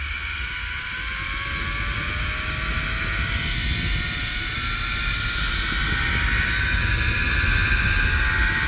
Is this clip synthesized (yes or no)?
no